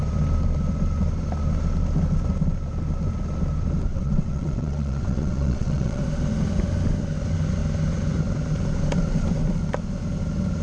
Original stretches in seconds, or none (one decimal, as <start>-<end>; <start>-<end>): 0.0-3.9; 6.0-10.6